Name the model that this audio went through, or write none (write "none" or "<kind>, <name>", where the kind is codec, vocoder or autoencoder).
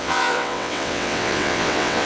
vocoder, WaveNeXt